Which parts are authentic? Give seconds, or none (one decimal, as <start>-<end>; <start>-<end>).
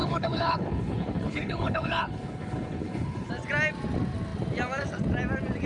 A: 3.3-5.7